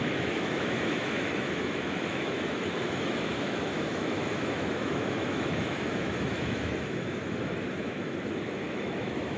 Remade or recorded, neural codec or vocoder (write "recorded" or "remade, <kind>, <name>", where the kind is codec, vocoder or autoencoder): remade, autoencoder, DAC-VAE